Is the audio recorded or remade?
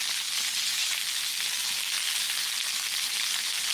recorded